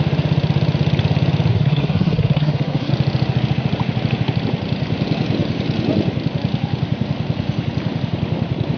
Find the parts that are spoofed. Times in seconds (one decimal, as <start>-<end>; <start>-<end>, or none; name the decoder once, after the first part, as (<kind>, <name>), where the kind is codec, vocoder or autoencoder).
1.5-2.9 (codec, SNAC)